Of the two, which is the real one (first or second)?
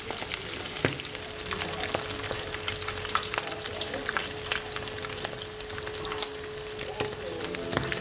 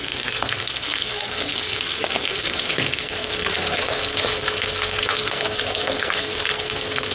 first